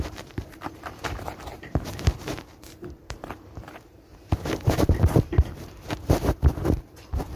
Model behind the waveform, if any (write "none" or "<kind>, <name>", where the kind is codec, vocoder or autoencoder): vocoder, BigVGAN v2